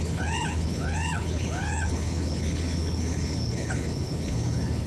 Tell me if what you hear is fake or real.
fake